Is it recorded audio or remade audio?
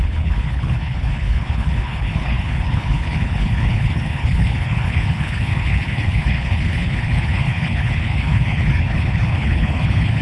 remade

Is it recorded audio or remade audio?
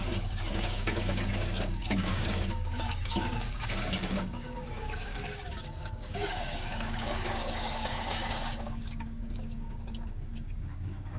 remade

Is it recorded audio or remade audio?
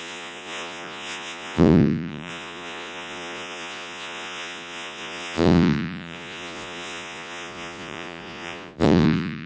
remade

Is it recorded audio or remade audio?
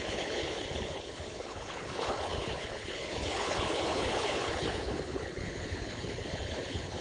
remade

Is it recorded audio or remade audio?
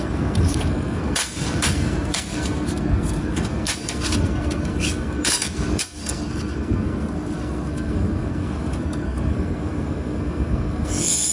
remade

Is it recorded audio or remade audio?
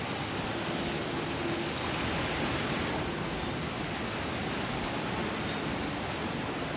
recorded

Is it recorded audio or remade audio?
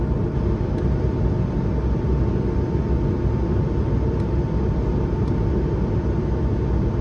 recorded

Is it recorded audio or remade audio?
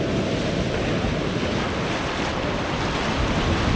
recorded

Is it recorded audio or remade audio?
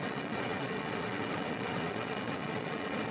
remade